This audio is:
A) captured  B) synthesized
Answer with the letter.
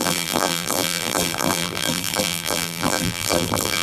B